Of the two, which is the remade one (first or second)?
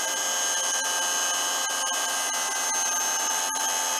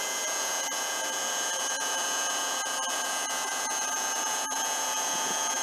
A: second